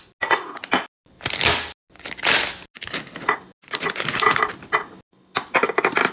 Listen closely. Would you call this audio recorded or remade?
recorded